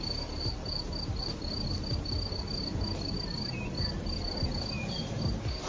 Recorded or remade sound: recorded